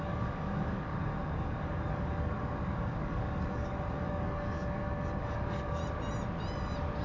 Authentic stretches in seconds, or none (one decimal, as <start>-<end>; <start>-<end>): 5.8-7.0

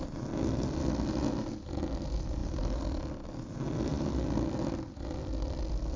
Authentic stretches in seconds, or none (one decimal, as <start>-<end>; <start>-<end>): 0.0-6.0

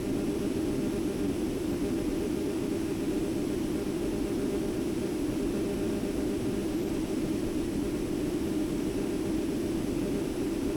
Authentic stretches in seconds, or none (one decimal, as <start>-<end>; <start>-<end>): 0.0-2.1; 3.2-6.6; 7.6-10.8

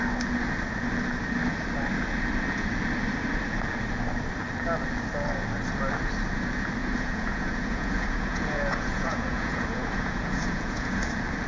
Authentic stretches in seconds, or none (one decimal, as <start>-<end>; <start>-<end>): 0.0-6.8; 11.0-11.5